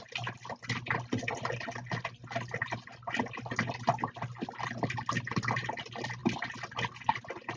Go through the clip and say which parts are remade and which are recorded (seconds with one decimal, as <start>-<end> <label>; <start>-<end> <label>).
0.0-7.6 recorded

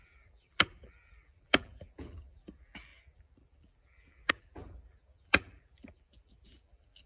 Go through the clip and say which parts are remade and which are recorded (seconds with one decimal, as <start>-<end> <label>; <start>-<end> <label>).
0.0-7.1 remade

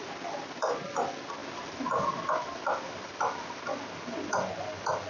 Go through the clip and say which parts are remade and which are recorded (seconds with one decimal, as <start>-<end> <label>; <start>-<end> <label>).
0.0-1.4 recorded; 1.4-3.2 remade; 3.2-5.1 recorded